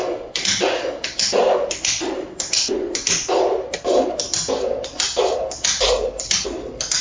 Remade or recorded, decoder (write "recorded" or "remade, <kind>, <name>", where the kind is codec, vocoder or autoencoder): recorded